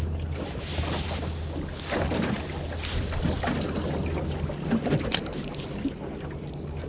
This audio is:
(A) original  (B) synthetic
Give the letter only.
A